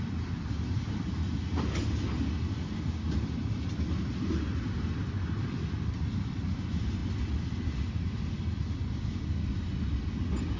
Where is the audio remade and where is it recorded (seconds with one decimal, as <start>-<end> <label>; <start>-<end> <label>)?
0.0-10.6 recorded